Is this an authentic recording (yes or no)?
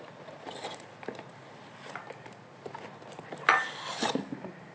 yes